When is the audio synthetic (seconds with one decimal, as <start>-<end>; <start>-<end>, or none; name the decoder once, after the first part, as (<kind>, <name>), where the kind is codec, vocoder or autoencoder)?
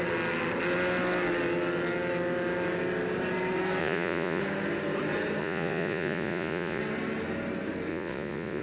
3.8-4.4 (vocoder, Vocos); 5.4-6.8; 7.9-8.6